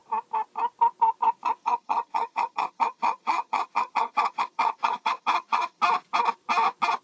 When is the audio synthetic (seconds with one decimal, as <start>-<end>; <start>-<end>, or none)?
1.6-5.8